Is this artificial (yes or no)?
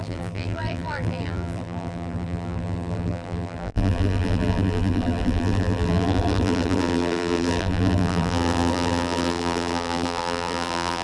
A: yes